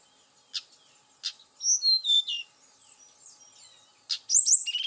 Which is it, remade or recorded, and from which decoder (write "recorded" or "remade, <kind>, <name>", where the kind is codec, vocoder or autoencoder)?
recorded